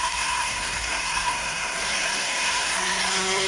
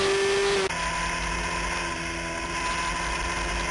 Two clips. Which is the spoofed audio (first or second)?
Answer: first